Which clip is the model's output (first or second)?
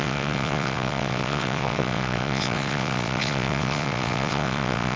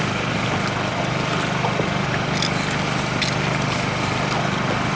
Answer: first